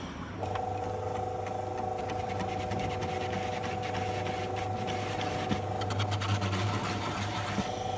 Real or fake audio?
real